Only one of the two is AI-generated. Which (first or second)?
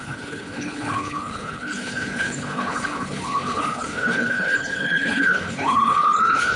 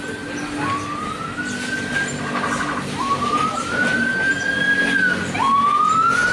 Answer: first